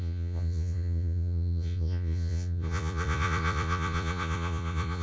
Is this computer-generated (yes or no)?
yes